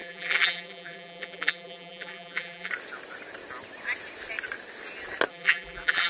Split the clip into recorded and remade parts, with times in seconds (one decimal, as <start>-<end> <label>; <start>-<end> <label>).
0.0-2.7 remade; 2.7-5.3 recorded; 5.3-6.1 remade